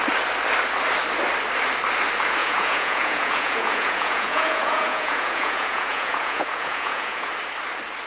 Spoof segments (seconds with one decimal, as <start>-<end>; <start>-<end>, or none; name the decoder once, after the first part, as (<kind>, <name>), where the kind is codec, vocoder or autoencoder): 2.4-7.3 (vocoder, Vocos)